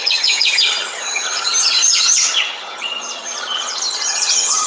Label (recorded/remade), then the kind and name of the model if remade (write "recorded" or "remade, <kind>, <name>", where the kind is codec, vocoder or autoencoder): remade, vocoder, HiFi-GAN